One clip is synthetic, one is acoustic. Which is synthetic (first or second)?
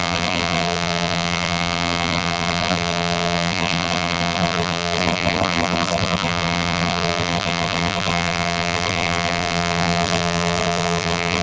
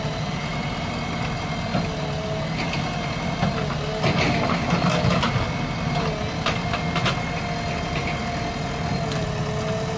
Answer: first